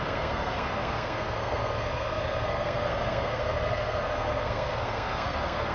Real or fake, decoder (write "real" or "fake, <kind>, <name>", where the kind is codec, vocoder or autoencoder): fake, codec, SNAC